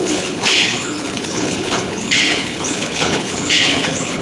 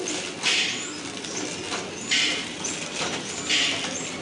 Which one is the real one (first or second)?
second